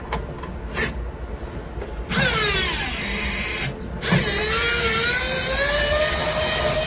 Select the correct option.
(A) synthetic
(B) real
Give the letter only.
B